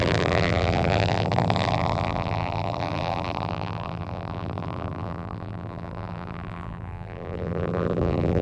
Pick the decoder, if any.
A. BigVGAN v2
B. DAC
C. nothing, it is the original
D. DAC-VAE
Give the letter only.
A